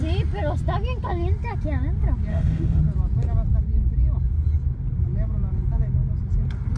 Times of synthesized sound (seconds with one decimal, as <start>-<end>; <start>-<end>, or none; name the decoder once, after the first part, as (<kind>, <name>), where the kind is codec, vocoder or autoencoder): 2.3-2.8 (autoencoder, DAC-VAE)